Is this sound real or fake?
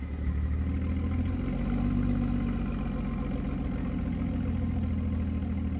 real